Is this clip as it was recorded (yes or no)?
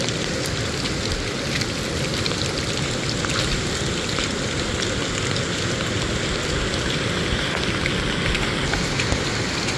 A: yes